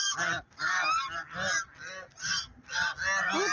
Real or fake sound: real